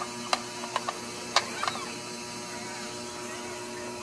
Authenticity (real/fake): real